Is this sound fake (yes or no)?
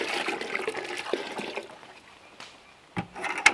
no